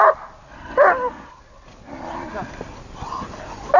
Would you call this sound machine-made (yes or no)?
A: no